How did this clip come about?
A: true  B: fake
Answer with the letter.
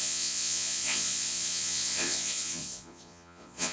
B